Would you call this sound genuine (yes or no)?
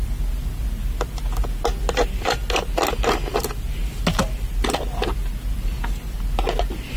yes